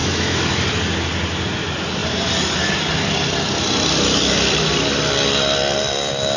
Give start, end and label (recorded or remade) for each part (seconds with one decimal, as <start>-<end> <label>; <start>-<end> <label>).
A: 0.0-0.5 remade; 0.5-6.4 recorded